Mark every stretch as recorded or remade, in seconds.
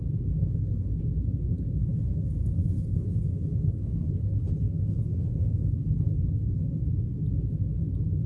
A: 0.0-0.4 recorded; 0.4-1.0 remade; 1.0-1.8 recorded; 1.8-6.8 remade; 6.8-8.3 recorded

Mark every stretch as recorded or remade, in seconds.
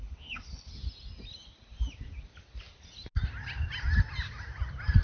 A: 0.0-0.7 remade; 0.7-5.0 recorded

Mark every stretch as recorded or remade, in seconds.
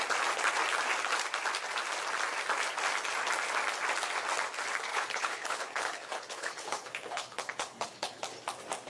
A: 0.0-4.9 recorded; 4.9-8.2 remade; 8.2-8.9 recorded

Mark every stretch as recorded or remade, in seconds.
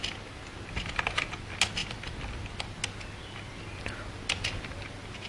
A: 0.0-5.3 recorded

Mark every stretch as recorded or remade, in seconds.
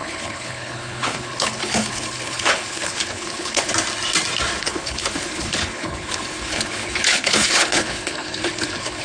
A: 0.0-3.7 remade; 3.7-4.6 recorded; 4.6-9.0 remade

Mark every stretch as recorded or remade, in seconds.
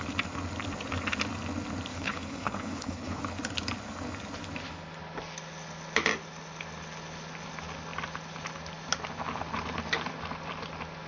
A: 0.0-1.9 recorded; 1.9-3.2 remade; 3.2-11.1 recorded